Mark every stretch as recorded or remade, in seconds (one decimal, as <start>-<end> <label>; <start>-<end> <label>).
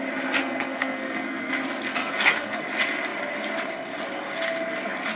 0.0-0.4 recorded; 0.4-1.5 remade; 1.5-1.9 recorded; 1.9-2.6 remade; 2.6-5.2 recorded